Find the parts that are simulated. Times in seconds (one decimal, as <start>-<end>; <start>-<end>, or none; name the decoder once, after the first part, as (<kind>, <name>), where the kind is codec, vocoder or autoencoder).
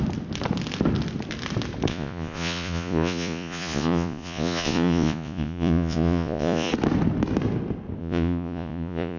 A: 1.9-6.7 (vocoder, Vocos); 8.0-9.2